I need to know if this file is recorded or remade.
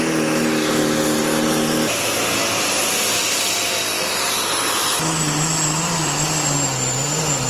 recorded